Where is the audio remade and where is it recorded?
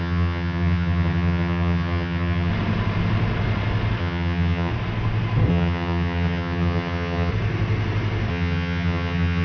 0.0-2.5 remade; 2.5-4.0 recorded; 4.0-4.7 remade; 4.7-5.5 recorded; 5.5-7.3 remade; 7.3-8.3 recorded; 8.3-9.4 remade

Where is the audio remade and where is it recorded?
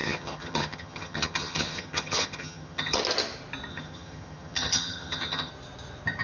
0.0-3.0 remade; 3.0-3.7 recorded; 3.7-5.5 remade; 5.5-6.2 recorded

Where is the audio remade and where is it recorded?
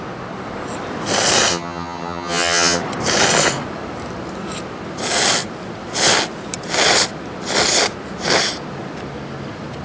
0.0-1.5 recorded; 1.5-2.8 remade; 2.8-9.8 recorded